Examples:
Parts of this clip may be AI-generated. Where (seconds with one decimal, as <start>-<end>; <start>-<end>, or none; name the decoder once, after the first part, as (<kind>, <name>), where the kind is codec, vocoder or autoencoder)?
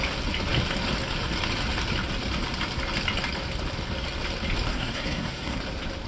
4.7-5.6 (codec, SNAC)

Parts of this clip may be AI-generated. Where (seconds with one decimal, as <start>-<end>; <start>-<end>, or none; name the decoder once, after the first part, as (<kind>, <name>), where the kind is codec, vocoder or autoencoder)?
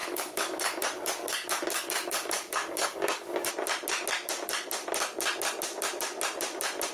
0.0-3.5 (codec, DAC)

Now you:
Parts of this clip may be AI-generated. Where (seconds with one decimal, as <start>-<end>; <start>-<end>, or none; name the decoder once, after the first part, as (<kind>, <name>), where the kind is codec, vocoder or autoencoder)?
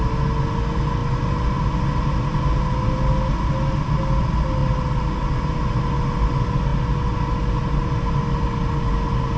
none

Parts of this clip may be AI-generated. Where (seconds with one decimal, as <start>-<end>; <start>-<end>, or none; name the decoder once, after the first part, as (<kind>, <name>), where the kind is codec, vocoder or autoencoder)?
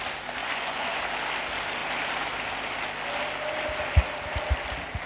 0.4-1.0 (vocoder, Vocos)